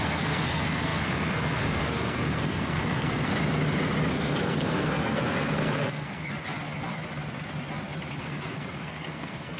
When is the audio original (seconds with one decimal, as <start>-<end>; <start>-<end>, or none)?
3.3-4.1; 6.2-8.2